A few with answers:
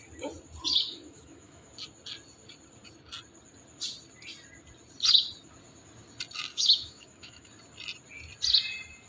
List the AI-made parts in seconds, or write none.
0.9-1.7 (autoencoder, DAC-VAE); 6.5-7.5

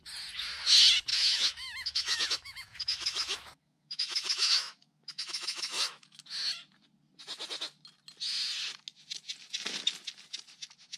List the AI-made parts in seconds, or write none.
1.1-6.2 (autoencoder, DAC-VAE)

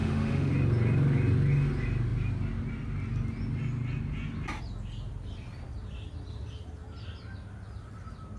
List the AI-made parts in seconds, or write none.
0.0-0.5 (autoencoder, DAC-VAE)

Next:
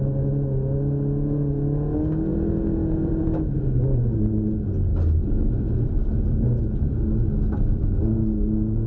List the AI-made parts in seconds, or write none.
none

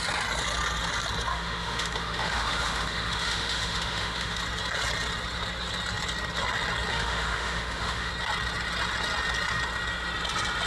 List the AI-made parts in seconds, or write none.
1.3-4.4 (autoencoder, DAC-VAE); 6.9-8.1

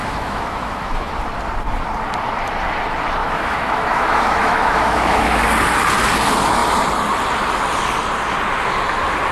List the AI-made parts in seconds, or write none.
0.0-1.1 (autoencoder, DAC-VAE); 3.2-5.4